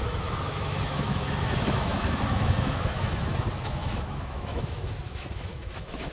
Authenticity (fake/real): fake